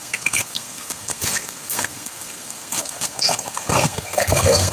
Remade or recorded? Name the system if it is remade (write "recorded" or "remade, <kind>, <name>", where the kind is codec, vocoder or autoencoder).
remade, codec, SNAC